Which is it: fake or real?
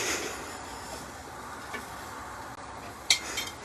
real